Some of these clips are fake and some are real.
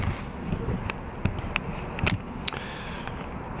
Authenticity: real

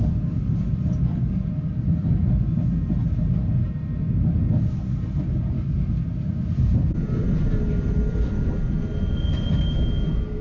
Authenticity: real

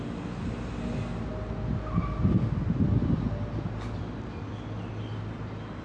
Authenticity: real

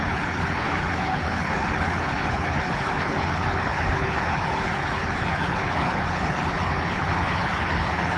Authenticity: fake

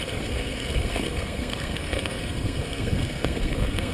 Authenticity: fake